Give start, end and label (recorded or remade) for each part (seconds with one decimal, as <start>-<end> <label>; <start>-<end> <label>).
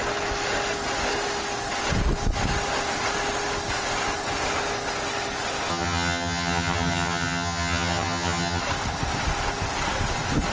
0.0-5.7 recorded; 5.7-8.6 remade; 8.6-10.5 recorded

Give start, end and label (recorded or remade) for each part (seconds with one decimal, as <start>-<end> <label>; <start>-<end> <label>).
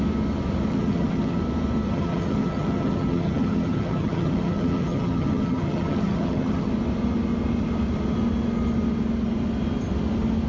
0.0-0.7 recorded; 0.7-1.4 remade; 1.4-1.9 recorded; 1.9-6.7 remade; 6.7-10.5 recorded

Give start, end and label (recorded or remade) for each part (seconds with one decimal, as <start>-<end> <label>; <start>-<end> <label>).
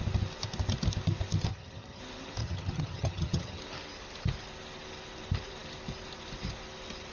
0.0-1.5 recorded; 1.5-2.0 remade; 2.0-2.4 recorded; 2.4-3.6 remade; 3.6-7.1 recorded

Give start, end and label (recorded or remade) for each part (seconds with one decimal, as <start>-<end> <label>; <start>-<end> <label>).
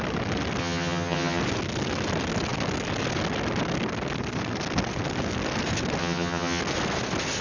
0.0-0.6 recorded; 0.6-1.4 remade; 1.4-6.0 recorded; 6.0-6.6 remade; 6.6-7.4 recorded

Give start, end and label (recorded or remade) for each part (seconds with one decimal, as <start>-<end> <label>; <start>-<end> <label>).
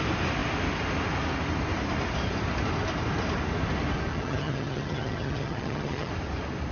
0.0-4.1 recorded; 4.1-6.1 remade; 6.1-6.7 recorded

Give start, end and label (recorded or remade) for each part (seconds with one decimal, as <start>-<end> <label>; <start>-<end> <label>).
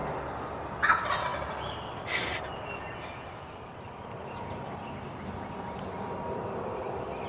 0.0-7.3 recorded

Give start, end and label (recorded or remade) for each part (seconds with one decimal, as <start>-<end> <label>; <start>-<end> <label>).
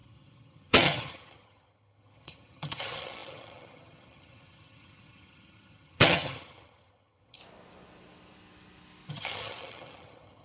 0.0-7.4 remade; 7.4-9.1 recorded; 9.1-10.4 remade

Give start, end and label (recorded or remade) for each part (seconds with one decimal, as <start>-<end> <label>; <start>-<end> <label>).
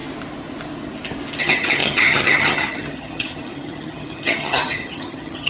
0.0-1.4 recorded; 1.4-5.5 remade